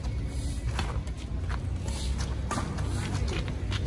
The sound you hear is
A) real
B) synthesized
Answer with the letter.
A